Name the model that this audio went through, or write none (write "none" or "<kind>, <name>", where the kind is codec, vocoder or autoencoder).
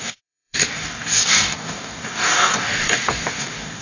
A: codec, DAC